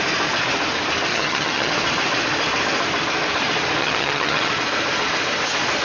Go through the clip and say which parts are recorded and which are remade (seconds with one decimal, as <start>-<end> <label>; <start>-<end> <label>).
0.0-1.1 recorded; 1.1-1.7 remade; 1.7-3.8 recorded; 3.8-4.5 remade; 4.5-5.8 recorded